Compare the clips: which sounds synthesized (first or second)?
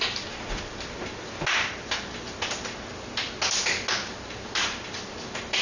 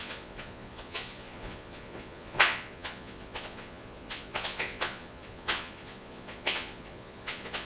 second